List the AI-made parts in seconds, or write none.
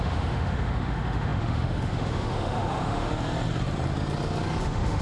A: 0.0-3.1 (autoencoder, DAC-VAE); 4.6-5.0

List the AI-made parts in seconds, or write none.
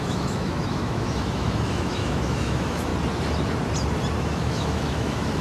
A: 0.0-2.9 (autoencoder, DAC-VAE); 4.2-5.4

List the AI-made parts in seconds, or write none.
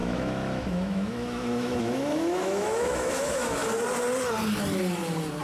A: 0.0-3.6 (autoencoder, DAC-VAE)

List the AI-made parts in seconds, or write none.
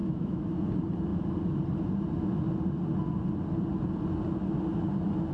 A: 0.0-0.5 (autoencoder, DAC-VAE)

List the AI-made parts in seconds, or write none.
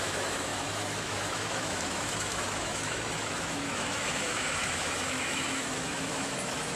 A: 0.0-6.8 (autoencoder, DAC-VAE)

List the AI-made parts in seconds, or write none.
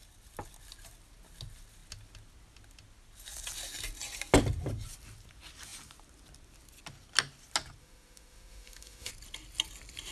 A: 7.8-9.1 (autoencoder, DAC-VAE)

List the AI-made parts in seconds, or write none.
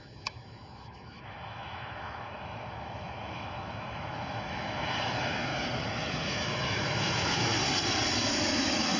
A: 0.0-5.5 (autoencoder, DAC-VAE); 6.3-7.6; 8.3-9.0